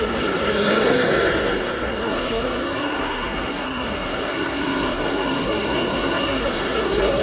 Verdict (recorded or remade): remade